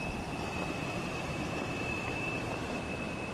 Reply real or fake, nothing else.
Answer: fake